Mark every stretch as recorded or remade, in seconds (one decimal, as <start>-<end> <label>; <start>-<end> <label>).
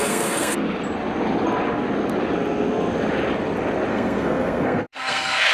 0.0-0.6 remade; 0.6-3.9 recorded; 3.9-5.5 remade